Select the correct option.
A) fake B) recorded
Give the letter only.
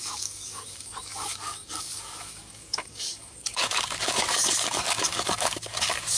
A